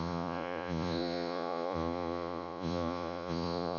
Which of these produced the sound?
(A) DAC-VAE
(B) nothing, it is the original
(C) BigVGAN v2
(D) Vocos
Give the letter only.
D